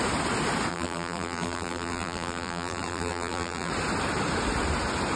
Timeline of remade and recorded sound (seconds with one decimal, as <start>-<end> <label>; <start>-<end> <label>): 0.0-0.7 recorded; 0.7-3.7 remade; 3.7-5.2 recorded